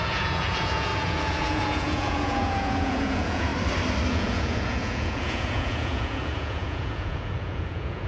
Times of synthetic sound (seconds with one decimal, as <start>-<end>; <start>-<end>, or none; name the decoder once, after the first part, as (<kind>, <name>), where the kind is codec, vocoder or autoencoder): 0.0-3.5 (vocoder, Vocos); 4.1-8.1